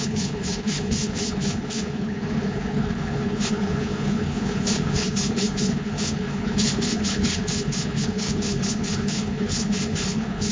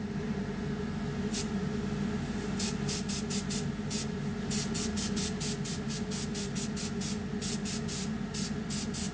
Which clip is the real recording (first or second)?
second